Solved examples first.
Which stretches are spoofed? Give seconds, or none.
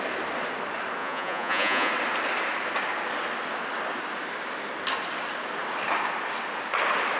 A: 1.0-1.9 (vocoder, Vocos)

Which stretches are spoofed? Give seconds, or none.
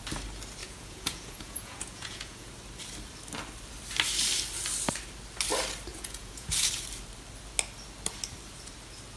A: 0.6-2.5 (vocoder, Vocos); 5.9-6.7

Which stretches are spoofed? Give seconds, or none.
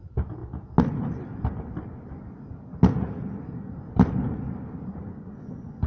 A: 4.9-5.9 (vocoder, Vocos)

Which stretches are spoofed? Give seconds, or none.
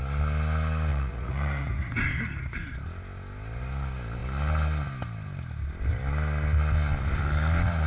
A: 0.9-2.0 (vocoder, Vocos)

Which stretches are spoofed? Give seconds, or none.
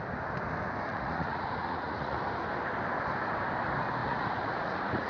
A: 0.9-2.2 (vocoder, Vocos); 4.0-5.1